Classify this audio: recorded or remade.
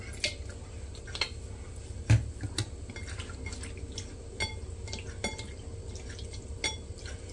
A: recorded